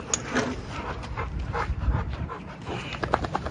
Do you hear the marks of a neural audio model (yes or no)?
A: no